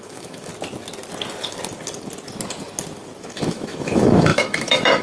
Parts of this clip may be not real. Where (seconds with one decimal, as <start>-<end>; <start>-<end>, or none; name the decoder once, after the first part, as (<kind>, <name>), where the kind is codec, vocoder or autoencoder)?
0.0-0.5 (autoencoder, DAC-VAE); 3.2-5.0